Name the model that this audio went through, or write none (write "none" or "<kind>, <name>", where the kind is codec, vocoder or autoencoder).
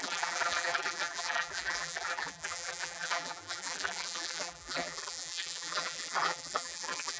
vocoder, BigVGAN v2